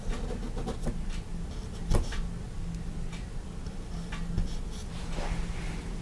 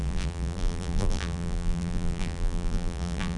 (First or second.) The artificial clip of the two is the second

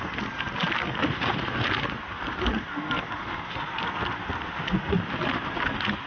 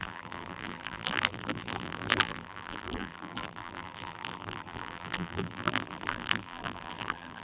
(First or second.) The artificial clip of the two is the second